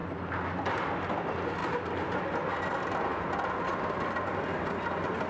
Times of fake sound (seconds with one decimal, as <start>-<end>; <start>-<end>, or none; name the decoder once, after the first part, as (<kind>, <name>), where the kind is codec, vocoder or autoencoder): none